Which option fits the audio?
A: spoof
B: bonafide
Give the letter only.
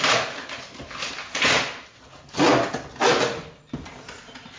B